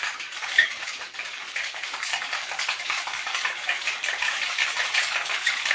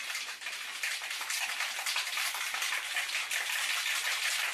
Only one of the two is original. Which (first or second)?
second